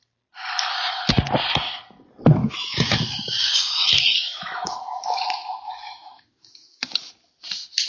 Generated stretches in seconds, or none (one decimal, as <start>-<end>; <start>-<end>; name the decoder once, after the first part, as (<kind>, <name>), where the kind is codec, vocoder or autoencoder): 2.4-7.1 (autoencoder, DAC-VAE)